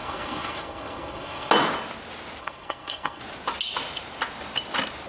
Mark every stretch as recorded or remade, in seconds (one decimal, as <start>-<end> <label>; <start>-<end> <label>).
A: 0.0-1.5 remade; 1.5-2.4 recorded; 2.4-3.2 remade; 3.2-5.1 recorded